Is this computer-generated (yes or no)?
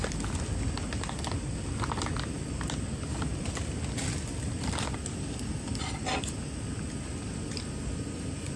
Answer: no